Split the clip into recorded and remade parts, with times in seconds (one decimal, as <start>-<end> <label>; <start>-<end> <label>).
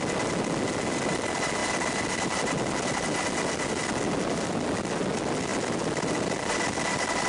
0.0-7.3 recorded